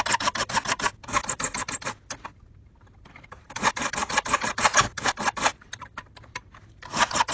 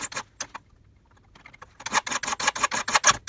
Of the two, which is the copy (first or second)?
first